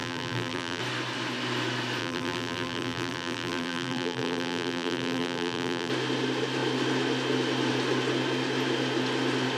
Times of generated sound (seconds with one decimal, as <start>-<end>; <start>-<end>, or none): 0.0-0.8; 2.0-5.9